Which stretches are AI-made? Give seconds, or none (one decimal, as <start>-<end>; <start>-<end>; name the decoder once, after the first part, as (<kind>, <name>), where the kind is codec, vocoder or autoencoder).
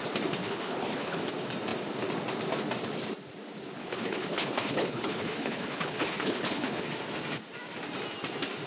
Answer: 0.4-1.2 (codec, HILCodec); 3.8-6.8